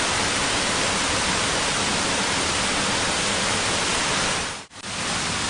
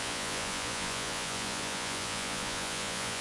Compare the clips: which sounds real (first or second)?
first